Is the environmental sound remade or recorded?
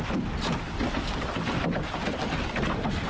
recorded